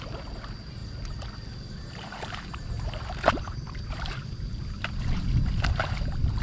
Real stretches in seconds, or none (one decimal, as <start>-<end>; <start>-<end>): 0.8-1.7

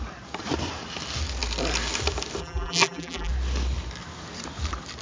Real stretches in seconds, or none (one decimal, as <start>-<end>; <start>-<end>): 0.0-2.4; 3.3-5.0